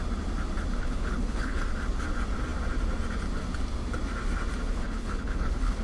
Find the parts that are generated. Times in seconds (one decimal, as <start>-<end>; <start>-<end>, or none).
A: 0.8-1.6; 4.7-5.8